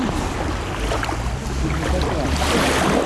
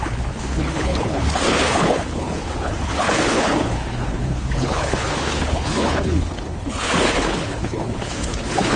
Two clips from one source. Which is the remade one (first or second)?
second